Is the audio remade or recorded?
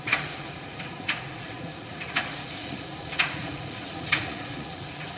remade